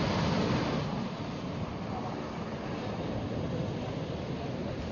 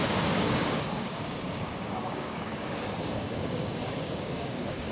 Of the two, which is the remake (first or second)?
second